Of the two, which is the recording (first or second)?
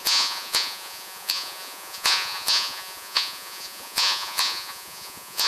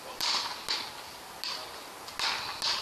second